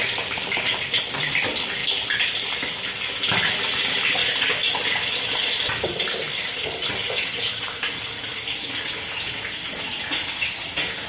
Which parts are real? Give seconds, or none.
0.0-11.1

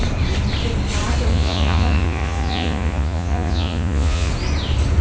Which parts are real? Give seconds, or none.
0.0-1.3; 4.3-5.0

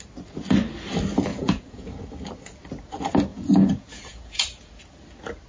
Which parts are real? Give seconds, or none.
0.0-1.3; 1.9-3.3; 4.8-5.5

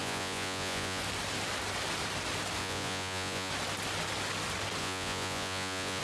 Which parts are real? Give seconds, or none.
1.0-2.6; 3.5-4.8